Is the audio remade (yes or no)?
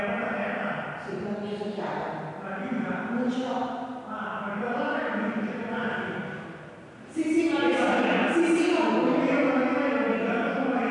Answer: no